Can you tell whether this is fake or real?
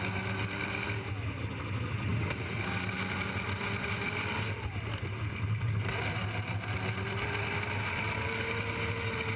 real